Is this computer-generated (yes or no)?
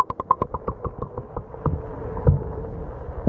no